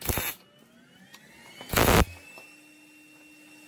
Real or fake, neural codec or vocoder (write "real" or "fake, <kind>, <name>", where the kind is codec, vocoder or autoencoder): real